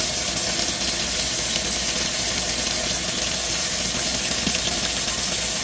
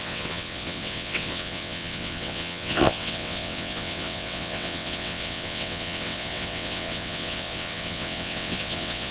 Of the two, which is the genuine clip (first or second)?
first